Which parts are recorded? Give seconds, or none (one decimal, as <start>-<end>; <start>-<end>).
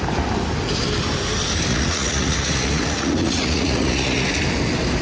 0.0-1.7; 4.3-5.0